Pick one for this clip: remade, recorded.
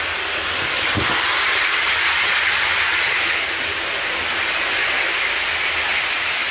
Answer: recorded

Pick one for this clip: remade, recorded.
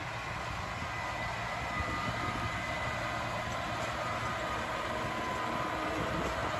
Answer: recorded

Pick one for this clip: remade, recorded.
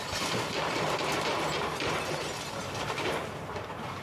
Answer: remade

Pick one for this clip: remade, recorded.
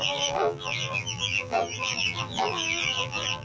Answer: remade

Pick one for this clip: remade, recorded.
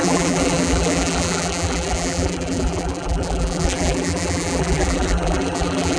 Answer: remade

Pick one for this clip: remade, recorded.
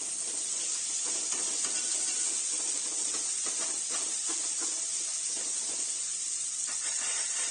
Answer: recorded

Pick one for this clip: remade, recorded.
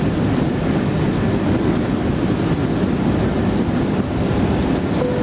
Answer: recorded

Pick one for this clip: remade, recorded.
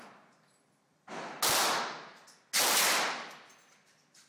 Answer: recorded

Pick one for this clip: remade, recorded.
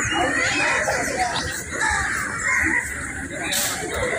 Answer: remade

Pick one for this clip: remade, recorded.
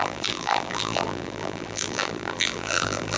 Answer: remade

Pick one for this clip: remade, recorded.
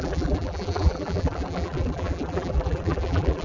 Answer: remade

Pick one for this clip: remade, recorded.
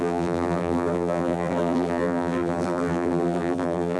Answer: remade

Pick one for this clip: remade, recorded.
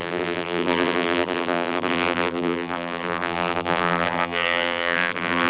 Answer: remade